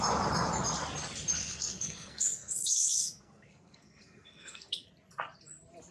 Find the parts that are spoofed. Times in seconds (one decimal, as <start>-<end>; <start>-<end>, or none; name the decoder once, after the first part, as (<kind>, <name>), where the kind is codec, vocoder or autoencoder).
1.4-4.9 (codec, SNAC)